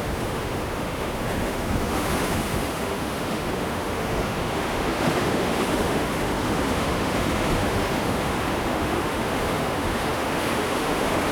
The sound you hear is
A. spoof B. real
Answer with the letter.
A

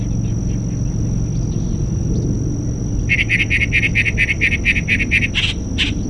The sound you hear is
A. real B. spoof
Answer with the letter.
A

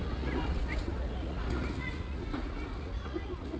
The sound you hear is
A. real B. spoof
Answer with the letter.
B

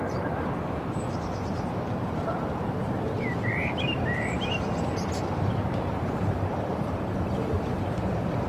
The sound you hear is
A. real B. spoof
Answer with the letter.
B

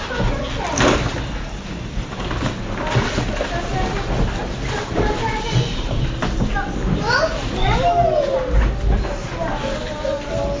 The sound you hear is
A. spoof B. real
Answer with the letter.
B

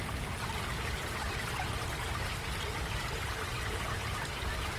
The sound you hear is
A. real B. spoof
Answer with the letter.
B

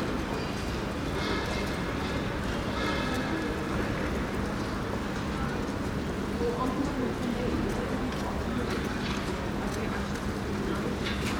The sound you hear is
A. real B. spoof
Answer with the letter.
A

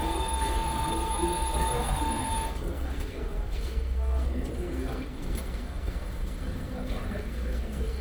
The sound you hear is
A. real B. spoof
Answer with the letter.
B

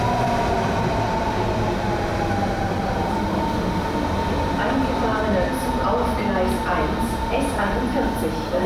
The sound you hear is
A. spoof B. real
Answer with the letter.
B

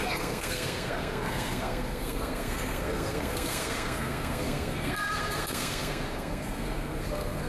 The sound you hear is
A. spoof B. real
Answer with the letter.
A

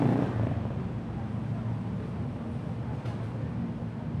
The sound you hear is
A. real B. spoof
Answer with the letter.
A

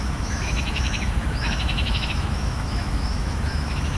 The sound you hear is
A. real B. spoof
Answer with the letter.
B